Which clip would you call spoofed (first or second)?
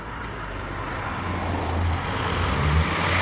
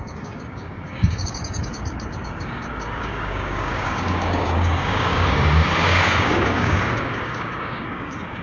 second